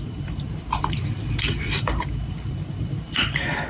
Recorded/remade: remade